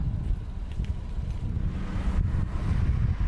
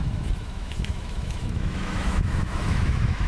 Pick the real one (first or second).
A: first